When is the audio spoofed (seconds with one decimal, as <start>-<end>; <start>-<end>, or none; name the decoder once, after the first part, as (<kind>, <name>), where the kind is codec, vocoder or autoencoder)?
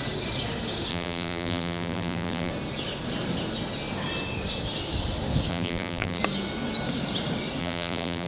0.9-2.5 (vocoder, BigVGAN v2); 5.5-6.2; 7.6-8.3